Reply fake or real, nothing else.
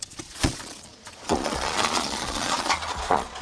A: fake